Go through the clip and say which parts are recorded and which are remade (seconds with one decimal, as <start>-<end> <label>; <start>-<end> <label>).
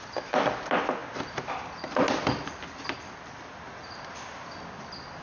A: 0.0-5.2 recorded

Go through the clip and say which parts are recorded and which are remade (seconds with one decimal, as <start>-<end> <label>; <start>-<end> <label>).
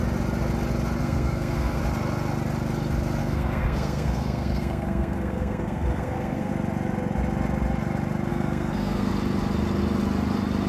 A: 0.0-1.0 recorded; 1.0-1.8 remade; 1.8-3.2 recorded; 3.2-6.5 remade; 6.5-8.3 recorded; 8.3-9.1 remade; 9.1-10.7 recorded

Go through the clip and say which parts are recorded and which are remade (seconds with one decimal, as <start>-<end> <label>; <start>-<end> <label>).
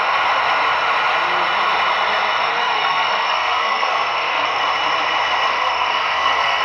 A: 0.0-2.4 recorded; 2.4-4.6 remade; 4.6-5.5 recorded; 5.5-6.6 remade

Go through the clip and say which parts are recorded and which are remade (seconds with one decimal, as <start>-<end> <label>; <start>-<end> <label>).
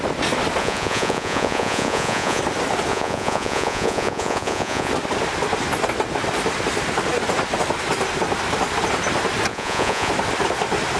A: 0.0-0.6 recorded; 0.6-2.4 remade; 2.4-2.9 recorded; 2.9-4.9 remade; 4.9-9.5 recorded; 9.5-10.1 remade; 10.1-11.0 recorded